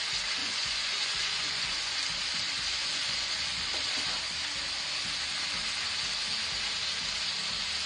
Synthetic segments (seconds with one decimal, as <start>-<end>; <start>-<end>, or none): 0.4-2.0; 2.7-3.7